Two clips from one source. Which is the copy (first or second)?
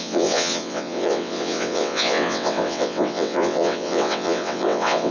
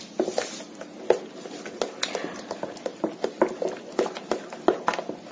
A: first